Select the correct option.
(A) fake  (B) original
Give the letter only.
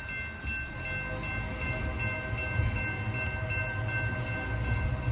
B